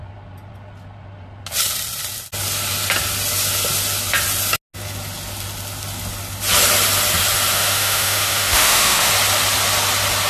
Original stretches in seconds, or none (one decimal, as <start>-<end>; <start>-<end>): 0.0-7.5; 9.1-10.3